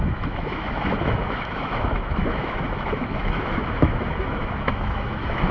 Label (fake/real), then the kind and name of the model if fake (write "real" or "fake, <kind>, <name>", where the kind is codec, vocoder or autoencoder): fake, autoencoder, DAC-VAE